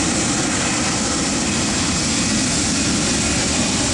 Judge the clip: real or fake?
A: real